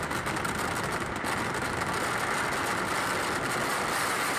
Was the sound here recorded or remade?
recorded